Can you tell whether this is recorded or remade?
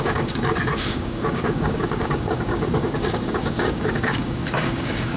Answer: remade